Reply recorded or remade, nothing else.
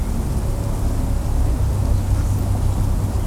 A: recorded